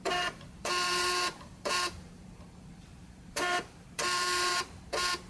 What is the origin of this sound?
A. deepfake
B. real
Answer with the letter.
A